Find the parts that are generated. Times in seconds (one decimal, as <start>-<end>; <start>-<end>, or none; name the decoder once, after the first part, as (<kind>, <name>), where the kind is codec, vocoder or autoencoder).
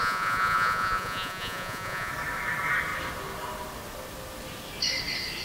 0.0-2.1 (vocoder, Vocos)